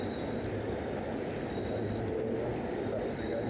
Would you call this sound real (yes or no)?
yes